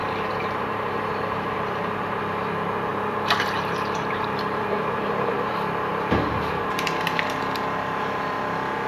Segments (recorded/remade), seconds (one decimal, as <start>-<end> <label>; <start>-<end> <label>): 0.0-2.2 remade; 2.2-2.9 recorded; 2.9-5.5 remade; 5.5-5.9 recorded; 5.9-8.2 remade; 8.2-8.9 recorded